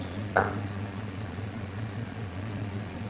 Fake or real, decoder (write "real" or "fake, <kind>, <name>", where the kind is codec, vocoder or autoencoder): fake, vocoder, Vocos